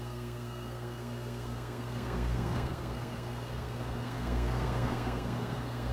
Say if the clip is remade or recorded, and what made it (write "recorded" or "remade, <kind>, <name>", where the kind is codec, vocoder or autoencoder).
remade, codec, SNAC